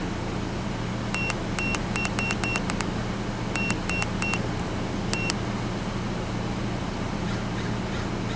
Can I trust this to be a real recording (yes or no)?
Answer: yes